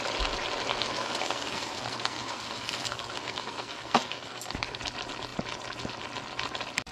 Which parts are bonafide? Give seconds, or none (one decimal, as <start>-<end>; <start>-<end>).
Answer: 0.0-0.7; 4.8-6.9